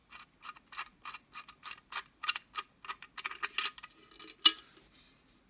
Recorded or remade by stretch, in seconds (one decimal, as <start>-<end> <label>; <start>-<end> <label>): 0.0-5.5 recorded

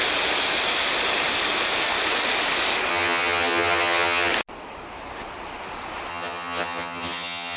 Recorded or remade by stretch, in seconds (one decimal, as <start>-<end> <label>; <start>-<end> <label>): 0.0-2.9 recorded; 2.9-4.3 remade; 4.3-6.1 recorded; 6.1-7.6 remade

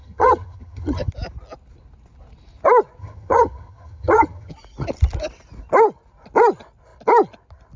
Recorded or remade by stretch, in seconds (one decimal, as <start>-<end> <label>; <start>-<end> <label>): 0.0-1.1 remade; 1.1-3.0 recorded; 3.0-4.5 remade; 4.5-7.8 recorded

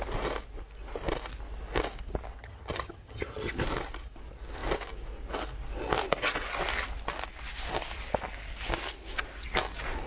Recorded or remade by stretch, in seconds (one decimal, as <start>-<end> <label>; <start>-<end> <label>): 0.0-2.4 recorded; 2.4-3.5 remade; 3.5-10.1 recorded

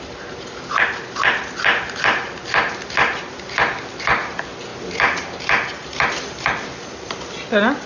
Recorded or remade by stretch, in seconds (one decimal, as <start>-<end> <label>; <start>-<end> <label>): 0.0-7.9 recorded

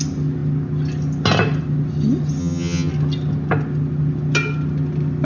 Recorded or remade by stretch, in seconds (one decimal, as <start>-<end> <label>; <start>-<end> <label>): 0.0-2.4 recorded; 2.4-2.9 remade; 2.9-5.2 recorded